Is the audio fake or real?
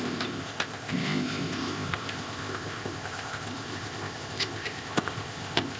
fake